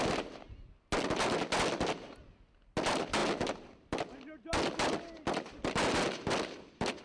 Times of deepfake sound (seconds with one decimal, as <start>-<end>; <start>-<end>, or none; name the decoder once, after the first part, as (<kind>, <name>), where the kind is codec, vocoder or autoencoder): none